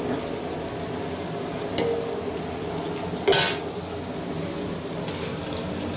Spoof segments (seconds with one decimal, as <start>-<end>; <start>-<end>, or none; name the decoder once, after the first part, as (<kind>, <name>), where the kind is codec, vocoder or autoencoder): none